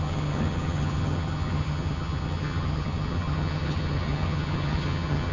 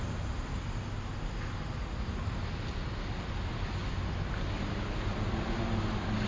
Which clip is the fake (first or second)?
first